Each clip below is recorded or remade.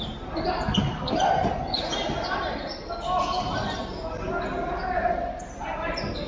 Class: recorded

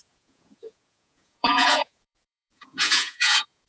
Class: remade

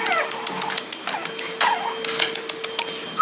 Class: recorded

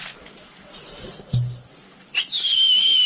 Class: recorded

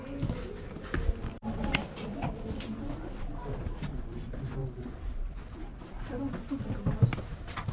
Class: recorded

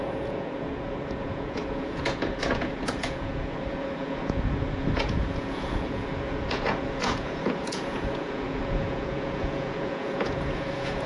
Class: remade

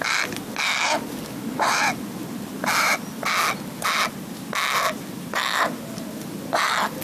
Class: recorded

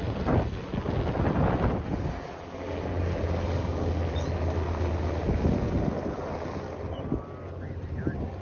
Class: recorded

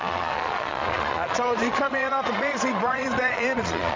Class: remade